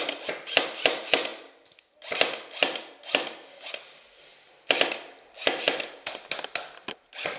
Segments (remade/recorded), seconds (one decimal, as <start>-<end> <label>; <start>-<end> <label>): 0.0-7.4 recorded